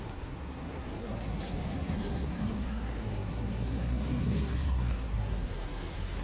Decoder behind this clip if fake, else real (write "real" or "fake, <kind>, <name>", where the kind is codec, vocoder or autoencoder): fake, codec, SNAC